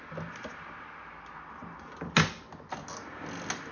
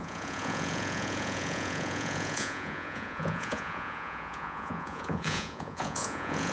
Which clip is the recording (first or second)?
first